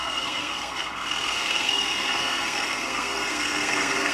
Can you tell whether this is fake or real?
fake